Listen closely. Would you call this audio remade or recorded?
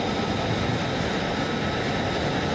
recorded